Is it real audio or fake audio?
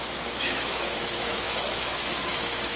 fake